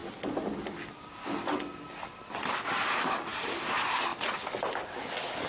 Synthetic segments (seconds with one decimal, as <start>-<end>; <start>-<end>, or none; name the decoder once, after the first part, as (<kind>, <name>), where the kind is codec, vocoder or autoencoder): none